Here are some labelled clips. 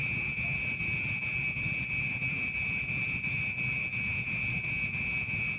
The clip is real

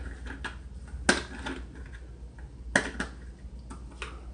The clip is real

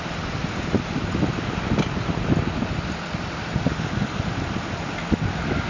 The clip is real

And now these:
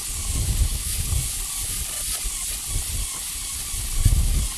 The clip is real